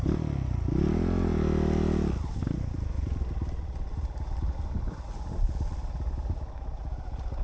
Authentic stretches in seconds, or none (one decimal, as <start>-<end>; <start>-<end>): 0.0-7.4